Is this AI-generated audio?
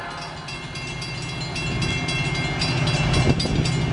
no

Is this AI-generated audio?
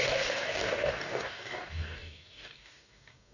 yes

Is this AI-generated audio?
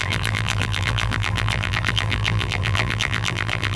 yes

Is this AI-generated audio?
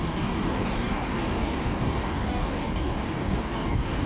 yes